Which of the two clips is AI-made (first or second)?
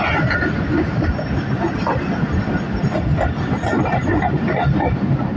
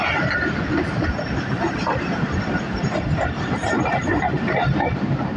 second